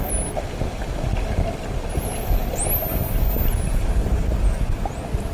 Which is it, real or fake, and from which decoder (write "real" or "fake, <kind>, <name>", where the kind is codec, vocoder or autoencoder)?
real